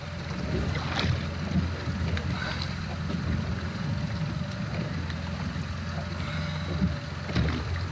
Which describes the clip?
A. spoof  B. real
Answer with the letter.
B